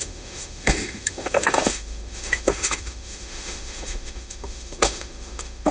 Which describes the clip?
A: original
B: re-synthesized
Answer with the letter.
B